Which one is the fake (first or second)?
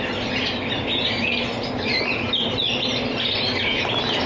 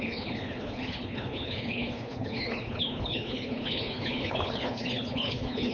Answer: second